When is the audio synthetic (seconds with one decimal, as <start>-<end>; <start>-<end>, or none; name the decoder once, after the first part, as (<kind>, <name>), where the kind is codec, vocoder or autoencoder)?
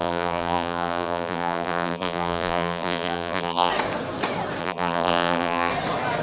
0.0-3.7 (vocoder, BigVGAN v2); 4.6-5.7